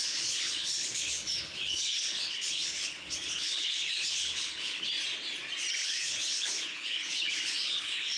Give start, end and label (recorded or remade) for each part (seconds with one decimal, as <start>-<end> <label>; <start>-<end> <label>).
0.0-4.9 remade; 4.9-5.8 recorded; 5.8-8.2 remade